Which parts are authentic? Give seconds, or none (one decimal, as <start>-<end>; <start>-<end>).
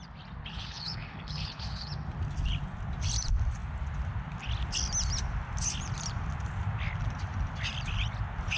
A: 0.0-0.4; 1.9-8.6